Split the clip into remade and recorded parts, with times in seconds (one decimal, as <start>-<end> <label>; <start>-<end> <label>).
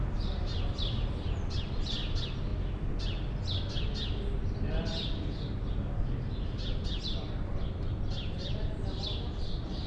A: 0.0-9.9 recorded